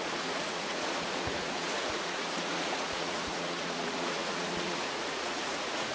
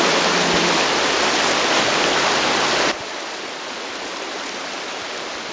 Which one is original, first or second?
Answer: second